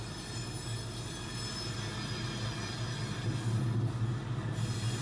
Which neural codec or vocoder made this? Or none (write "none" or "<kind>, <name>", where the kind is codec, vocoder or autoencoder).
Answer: none